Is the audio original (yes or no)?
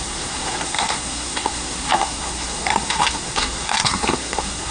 no